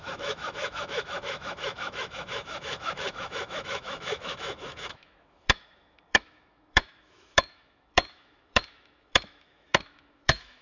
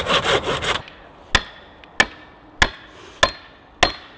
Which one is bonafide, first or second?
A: second